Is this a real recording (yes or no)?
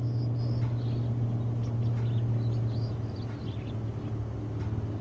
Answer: yes